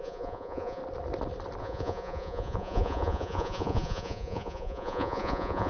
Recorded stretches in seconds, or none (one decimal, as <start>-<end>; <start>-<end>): 0.8-1.6